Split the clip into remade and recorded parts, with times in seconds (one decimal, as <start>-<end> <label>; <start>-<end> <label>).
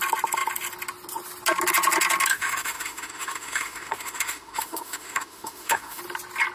0.0-2.3 recorded; 2.3-6.0 remade; 6.0-6.5 recorded